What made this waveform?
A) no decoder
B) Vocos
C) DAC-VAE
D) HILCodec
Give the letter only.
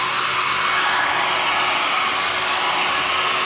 A